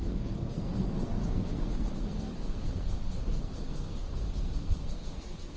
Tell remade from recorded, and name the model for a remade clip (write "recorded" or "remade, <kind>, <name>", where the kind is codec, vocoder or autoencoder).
remade, codec, SNAC